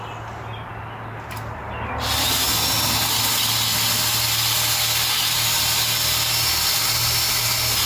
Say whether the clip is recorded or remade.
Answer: recorded